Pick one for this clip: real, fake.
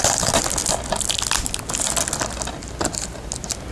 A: real